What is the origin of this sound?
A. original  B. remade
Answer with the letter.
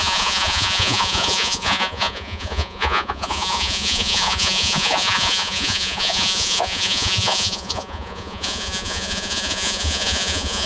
B